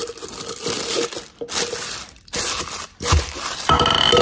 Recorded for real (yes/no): yes